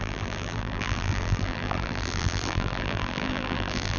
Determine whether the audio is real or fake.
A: fake